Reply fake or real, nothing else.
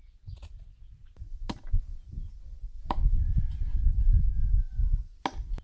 real